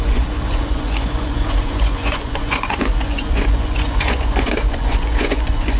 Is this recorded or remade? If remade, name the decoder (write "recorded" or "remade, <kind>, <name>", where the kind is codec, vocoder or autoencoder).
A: remade, vocoder, Vocos